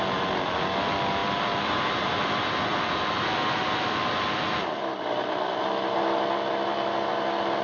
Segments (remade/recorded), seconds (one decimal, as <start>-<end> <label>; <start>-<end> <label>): 0.0-7.6 recorded